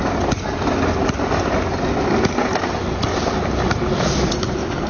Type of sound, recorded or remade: recorded